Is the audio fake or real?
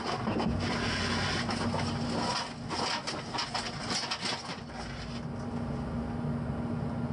real